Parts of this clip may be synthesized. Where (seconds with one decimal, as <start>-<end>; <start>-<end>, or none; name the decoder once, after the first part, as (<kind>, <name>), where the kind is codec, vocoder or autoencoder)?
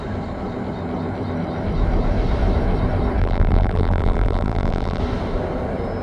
3.2-5.0 (vocoder, BigVGAN v2)